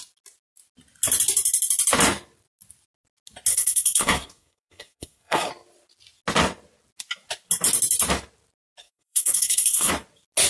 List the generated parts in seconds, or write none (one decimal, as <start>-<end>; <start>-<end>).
3.5-5.5; 8.8-9.9